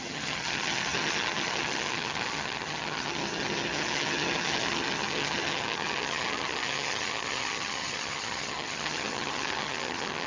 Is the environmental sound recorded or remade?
remade